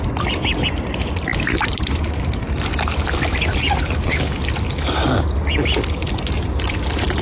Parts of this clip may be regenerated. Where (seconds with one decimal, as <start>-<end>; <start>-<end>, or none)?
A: 1.3-2.5